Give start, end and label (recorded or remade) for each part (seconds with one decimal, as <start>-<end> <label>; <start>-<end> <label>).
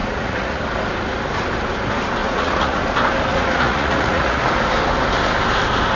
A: 0.0-0.6 remade; 0.6-2.2 recorded; 2.2-2.8 remade; 2.8-3.3 recorded; 3.3-4.4 remade; 4.4-6.0 recorded